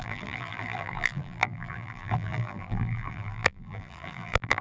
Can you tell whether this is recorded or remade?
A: remade